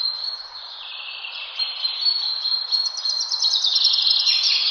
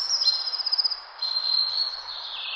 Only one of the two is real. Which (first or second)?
second